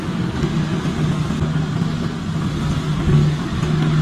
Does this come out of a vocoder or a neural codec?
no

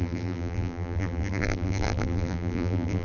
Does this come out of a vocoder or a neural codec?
yes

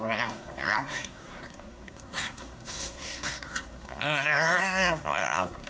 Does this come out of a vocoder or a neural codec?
yes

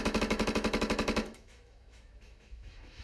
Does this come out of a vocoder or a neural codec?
yes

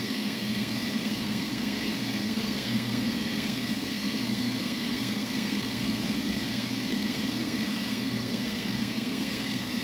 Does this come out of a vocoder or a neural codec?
yes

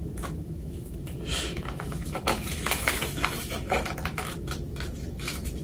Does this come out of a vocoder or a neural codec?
yes